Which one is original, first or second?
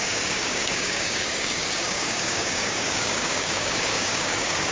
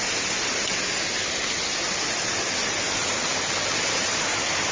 second